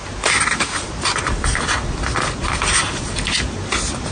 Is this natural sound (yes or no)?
yes